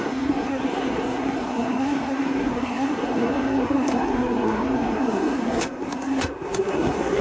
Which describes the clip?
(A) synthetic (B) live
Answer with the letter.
A